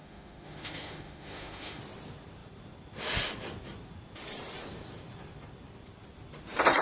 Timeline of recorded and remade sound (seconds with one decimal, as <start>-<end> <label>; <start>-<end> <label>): 0.0-1.8 remade; 1.8-6.8 recorded